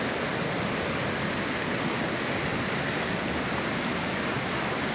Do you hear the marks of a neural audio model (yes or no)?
no